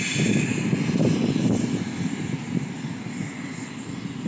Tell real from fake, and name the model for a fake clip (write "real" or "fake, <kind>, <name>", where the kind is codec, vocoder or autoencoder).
real